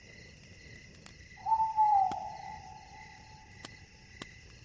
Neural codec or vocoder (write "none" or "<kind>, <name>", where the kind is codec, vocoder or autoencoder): none